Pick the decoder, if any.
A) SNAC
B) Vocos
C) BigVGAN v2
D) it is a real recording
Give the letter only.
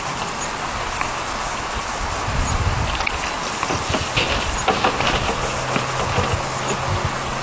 D